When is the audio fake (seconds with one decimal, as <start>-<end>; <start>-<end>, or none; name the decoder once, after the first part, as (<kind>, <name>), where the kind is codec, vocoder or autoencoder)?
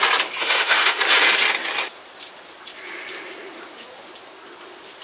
0.4-1.0 (autoencoder, DAC-VAE)